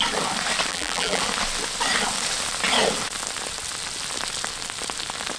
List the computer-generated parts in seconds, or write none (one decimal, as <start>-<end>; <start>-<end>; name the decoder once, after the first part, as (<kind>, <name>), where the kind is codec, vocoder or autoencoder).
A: 0.7-1.2 (vocoder, BigVGAN v2)